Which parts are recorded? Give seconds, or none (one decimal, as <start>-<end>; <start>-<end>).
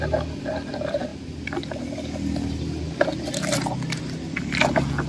0.0-5.1